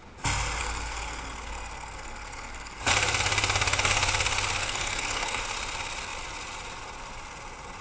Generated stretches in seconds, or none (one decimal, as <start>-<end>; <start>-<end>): 0.6-2.8; 4.6-5.4